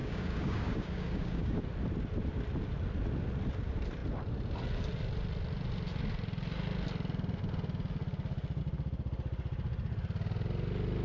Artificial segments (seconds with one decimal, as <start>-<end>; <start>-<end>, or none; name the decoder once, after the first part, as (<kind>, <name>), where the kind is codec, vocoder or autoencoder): 0.0-1.6 (codec, DAC)